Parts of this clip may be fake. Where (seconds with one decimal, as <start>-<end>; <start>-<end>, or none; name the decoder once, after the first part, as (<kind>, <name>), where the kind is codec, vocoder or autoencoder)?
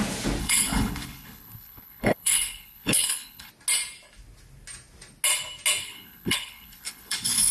0.4-3.5 (codec, HILCodec); 5.8-7.5